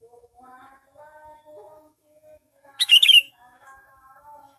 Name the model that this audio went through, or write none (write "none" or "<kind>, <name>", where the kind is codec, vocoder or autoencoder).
autoencoder, DAC-VAE